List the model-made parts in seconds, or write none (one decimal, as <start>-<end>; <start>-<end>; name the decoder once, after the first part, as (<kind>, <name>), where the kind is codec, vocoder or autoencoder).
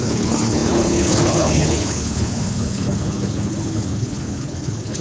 0.0-5.0 (codec, HILCodec)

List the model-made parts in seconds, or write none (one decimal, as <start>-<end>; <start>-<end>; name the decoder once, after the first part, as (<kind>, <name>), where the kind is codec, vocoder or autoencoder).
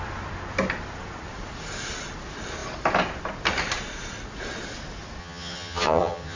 5.2-6.4 (vocoder, HiFi-GAN)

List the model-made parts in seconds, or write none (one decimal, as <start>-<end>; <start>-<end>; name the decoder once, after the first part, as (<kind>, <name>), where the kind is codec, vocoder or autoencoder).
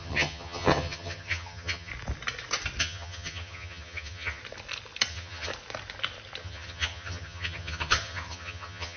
0.0-1.9 (vocoder, HiFi-GAN); 2.8-4.4; 5.1-5.5; 6.4-9.0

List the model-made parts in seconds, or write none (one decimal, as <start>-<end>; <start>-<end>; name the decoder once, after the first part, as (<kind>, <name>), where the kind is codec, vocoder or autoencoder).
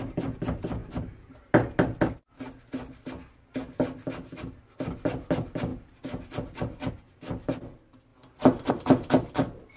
none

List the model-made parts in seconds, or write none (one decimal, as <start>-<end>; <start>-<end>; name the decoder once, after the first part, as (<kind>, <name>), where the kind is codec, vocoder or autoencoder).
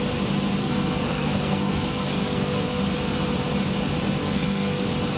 0.6-2.8 (codec, SNAC); 4.2-4.8